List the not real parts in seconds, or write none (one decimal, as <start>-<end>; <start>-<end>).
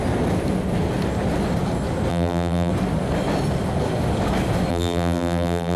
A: 2.1-2.7; 4.7-5.8